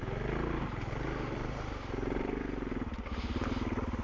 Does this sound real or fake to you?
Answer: real